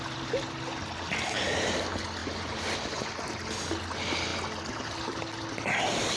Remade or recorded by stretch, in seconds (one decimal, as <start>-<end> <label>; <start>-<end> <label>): 0.0-2.2 recorded; 2.2-3.3 remade; 3.3-6.2 recorded